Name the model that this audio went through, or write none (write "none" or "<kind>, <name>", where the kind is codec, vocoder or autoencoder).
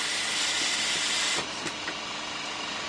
none